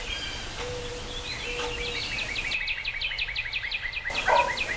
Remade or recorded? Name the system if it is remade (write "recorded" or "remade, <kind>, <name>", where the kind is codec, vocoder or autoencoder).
recorded